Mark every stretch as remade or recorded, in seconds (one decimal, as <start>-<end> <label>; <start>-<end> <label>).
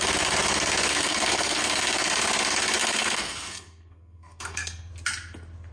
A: 0.0-1.0 recorded; 1.0-1.6 remade; 1.6-2.8 recorded; 2.8-4.9 remade; 4.9-5.7 recorded